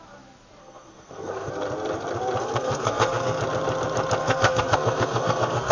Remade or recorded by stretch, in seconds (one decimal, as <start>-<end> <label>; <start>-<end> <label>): 0.0-0.6 recorded; 0.6-1.5 remade; 1.5-2.4 recorded; 2.4-3.4 remade; 3.4-4.2 recorded; 4.2-5.7 remade